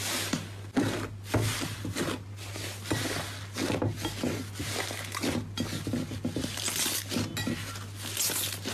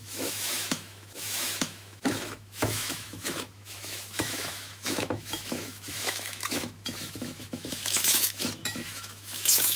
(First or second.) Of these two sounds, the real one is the first